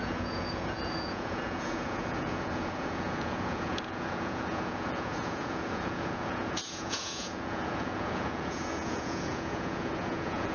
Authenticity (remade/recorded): remade